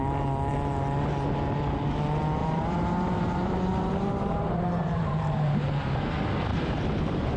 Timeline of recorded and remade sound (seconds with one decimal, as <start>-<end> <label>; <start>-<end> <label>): 0.0-2.4 recorded; 2.4-6.1 remade; 6.1-6.5 recorded; 6.5-7.4 remade